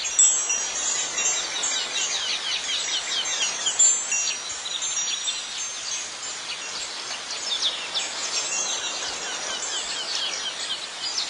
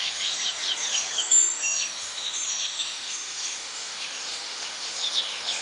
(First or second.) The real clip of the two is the first